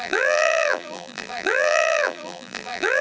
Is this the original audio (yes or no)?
no